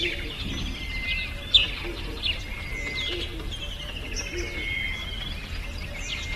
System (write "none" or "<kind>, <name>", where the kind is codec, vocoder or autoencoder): none